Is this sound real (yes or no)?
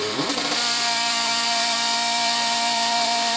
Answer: no